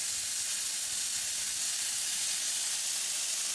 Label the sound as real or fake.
real